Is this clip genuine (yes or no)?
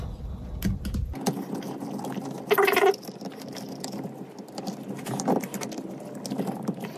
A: yes